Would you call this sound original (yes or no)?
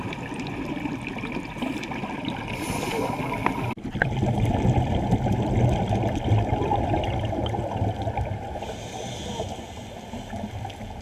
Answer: yes